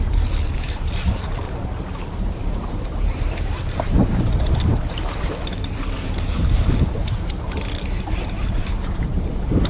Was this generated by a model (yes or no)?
yes